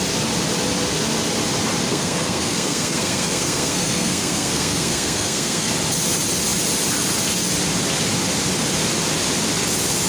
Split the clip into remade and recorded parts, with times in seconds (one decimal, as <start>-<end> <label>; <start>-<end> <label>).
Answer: 0.0-1.9 recorded; 1.9-5.7 remade; 5.7-10.1 recorded